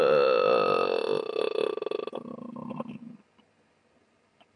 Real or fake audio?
real